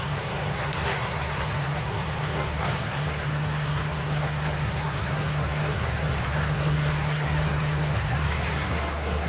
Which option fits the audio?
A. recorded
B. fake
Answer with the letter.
B